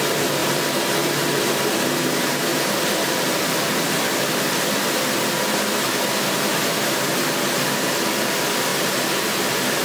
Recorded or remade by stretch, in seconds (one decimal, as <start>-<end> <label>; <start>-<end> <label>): 0.0-2.5 recorded; 2.5-4.2 remade; 4.2-8.7 recorded; 8.7-9.8 remade